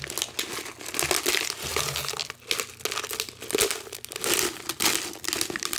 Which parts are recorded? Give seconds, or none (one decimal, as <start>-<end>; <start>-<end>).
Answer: 0.0-5.8